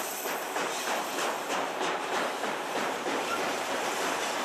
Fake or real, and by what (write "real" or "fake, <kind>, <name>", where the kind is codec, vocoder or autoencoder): fake, vocoder, BigVGAN v2